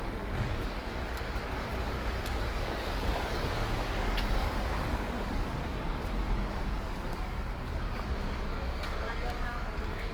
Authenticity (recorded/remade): remade